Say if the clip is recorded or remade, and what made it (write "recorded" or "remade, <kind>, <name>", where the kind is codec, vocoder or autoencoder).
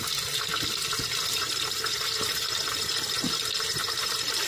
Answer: recorded